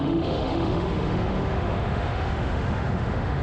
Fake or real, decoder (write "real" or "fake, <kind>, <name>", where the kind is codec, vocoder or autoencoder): fake, autoencoder, DAC-VAE